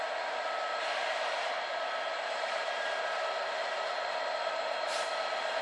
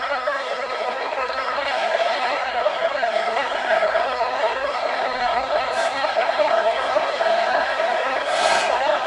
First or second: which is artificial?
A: second